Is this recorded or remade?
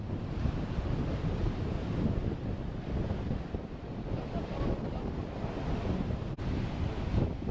recorded